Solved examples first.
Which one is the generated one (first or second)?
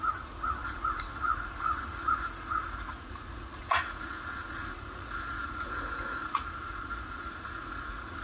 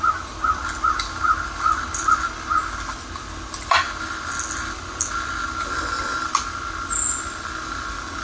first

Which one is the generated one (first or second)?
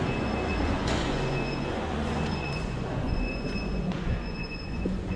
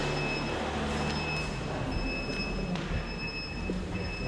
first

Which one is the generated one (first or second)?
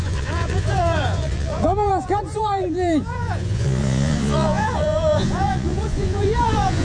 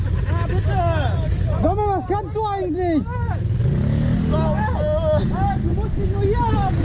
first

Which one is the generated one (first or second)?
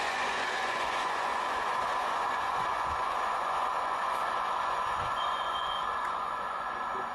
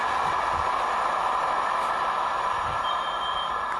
first